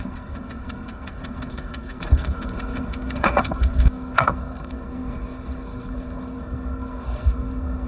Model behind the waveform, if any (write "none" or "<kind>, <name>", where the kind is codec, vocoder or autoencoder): codec, SNAC